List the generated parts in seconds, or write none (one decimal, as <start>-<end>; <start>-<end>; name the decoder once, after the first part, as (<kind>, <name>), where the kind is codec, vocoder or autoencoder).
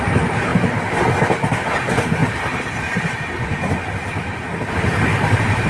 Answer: 0.0-2.2 (vocoder, BigVGAN v2); 3.7-5.7